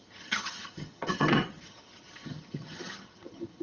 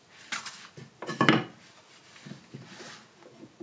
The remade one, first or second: first